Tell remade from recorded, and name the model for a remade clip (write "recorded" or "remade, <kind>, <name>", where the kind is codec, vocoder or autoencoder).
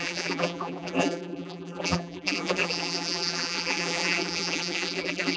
remade, vocoder, BigVGAN v2